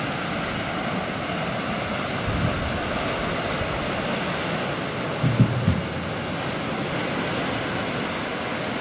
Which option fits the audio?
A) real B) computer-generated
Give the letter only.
A